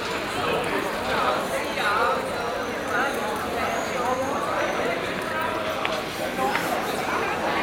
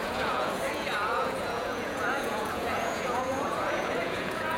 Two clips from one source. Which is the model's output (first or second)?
second